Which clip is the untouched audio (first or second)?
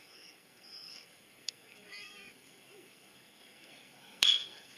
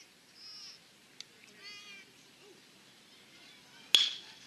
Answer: second